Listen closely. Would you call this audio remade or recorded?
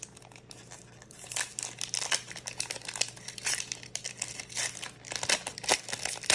recorded